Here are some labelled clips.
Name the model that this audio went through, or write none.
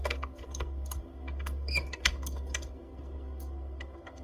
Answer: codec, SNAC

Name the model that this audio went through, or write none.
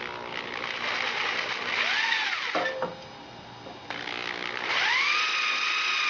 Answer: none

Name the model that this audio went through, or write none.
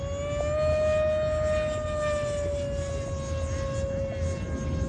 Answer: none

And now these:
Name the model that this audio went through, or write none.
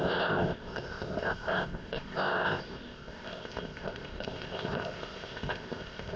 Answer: codec, ZipCodec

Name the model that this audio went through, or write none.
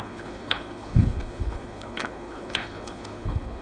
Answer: codec, HILCodec